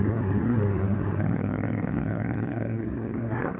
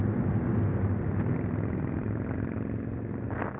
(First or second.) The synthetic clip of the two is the first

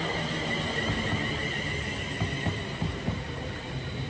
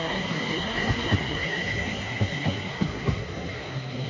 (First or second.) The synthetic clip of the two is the second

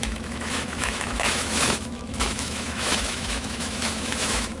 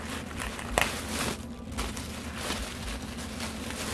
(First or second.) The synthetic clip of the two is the first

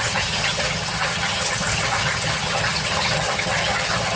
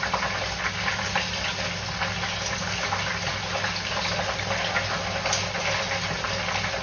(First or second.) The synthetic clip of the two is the first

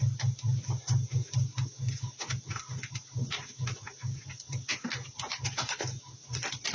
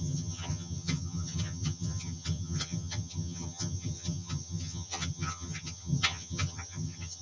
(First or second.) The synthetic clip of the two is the second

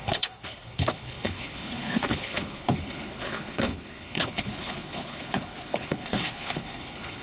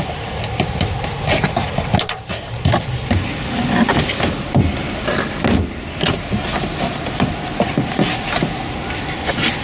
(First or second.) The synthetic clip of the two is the first